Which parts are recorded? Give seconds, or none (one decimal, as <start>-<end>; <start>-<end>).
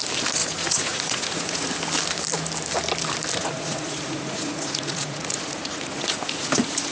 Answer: 0.0-0.4; 1.7-3.4